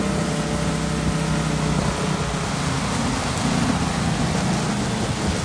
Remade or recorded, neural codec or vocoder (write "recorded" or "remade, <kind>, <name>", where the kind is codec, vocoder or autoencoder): recorded